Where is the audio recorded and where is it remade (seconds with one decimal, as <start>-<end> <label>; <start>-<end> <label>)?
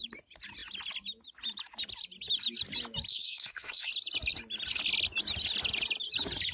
0.0-3.1 recorded; 3.1-3.9 remade; 3.9-6.5 recorded